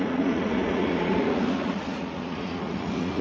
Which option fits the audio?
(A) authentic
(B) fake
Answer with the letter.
B